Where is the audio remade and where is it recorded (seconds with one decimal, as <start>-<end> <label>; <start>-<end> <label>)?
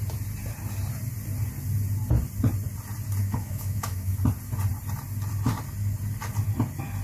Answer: 0.0-3.2 recorded; 3.2-4.2 remade; 4.2-7.0 recorded